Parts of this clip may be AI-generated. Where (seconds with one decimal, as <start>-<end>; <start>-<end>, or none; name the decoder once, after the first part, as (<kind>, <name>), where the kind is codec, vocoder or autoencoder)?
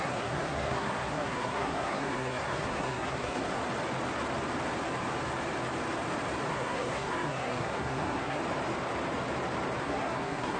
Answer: 0.0-3.6 (codec, SNAC); 6.5-8.4; 9.8-10.6